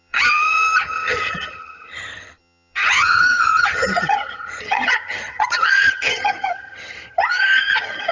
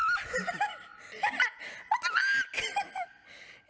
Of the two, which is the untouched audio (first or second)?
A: second